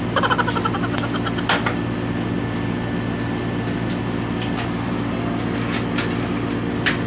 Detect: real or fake real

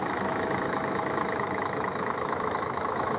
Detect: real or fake fake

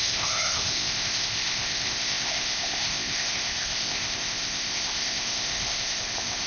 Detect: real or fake fake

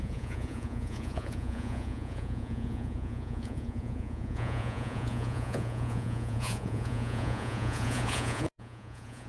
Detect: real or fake fake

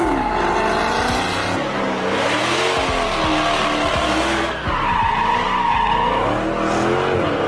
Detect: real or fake real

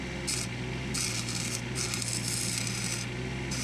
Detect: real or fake real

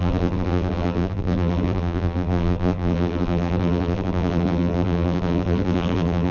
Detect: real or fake fake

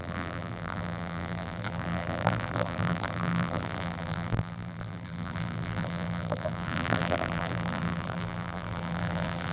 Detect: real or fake fake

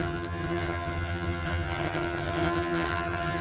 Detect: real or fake fake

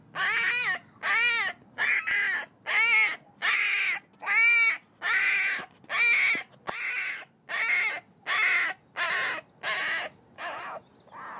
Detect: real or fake real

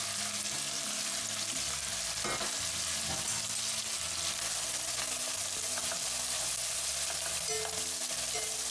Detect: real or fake real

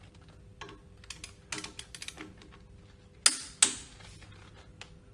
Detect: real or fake real